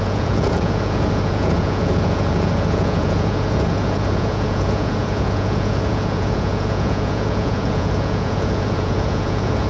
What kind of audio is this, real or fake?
fake